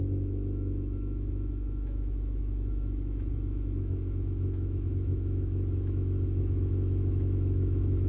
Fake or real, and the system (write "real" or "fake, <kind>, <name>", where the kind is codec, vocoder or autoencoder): fake, autoencoder, DAC-VAE